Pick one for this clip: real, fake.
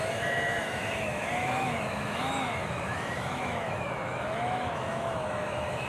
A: fake